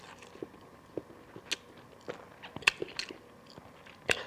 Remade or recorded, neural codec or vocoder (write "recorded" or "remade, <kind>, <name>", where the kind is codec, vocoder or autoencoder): recorded